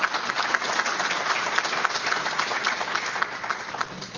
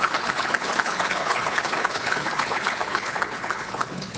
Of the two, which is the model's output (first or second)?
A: second